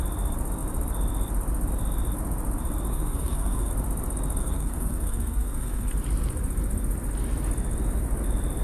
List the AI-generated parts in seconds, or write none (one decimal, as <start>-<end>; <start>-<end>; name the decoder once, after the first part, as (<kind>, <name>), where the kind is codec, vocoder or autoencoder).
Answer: 2.9-3.7 (codec, SNAC); 4.4-5.9